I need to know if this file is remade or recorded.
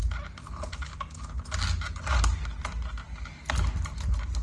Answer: recorded